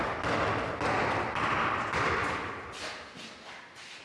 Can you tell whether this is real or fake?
real